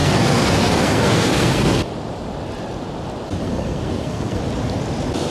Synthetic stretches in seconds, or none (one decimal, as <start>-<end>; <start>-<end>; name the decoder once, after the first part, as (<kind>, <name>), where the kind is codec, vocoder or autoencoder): 0.0-1.9 (codec, SNAC); 3.4-4.4

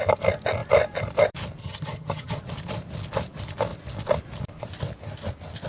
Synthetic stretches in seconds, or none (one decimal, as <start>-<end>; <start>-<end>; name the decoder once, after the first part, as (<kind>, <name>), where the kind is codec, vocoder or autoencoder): 1.6-2.4 (vocoder, HiFi-GAN)